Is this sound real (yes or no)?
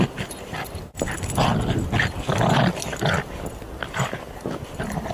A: yes